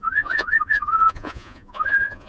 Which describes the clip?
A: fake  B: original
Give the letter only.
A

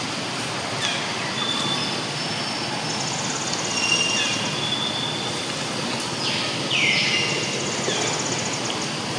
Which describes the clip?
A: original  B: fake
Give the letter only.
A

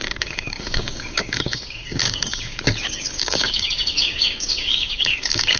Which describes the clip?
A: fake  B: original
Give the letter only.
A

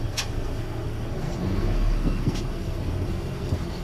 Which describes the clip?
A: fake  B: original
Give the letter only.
A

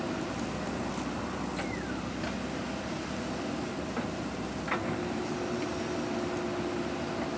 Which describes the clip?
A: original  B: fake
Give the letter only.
A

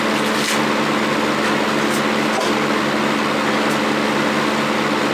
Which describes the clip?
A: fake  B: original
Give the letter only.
B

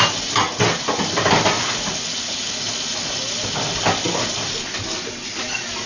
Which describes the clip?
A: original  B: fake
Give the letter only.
A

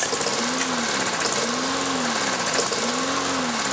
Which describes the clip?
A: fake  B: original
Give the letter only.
B